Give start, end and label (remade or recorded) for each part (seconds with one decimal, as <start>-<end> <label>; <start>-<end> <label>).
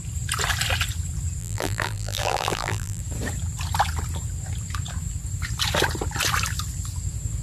0.0-1.4 recorded; 1.4-3.0 remade; 3.0-7.4 recorded